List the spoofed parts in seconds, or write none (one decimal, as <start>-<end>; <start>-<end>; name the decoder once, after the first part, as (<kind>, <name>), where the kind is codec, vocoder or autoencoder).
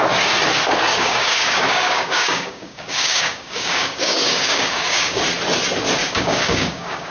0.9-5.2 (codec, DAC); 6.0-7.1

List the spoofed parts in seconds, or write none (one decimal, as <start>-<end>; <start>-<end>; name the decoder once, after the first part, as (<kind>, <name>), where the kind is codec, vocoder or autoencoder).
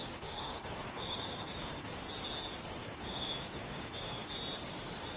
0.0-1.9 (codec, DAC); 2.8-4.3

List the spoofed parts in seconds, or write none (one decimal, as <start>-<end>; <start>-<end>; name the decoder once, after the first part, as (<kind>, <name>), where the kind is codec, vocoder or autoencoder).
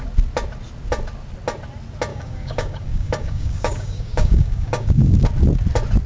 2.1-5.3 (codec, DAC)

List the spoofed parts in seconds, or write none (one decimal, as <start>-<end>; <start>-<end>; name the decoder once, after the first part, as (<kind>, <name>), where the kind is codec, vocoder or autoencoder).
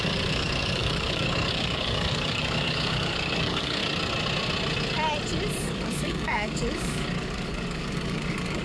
0.0-3.8 (codec, DAC); 5.6-8.6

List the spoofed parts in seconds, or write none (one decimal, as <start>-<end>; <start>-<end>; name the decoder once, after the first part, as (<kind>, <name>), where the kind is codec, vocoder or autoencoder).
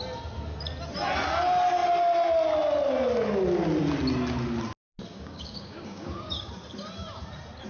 5.1-6.5 (codec, DAC)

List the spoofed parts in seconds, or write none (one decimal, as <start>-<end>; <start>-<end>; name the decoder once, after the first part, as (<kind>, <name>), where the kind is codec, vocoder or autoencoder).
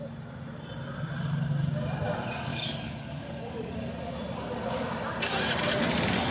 2.5-3.7 (codec, DAC)